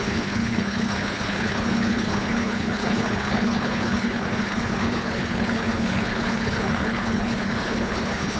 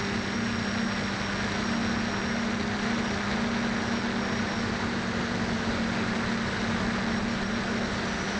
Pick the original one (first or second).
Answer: second